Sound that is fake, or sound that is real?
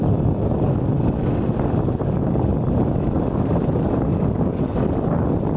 real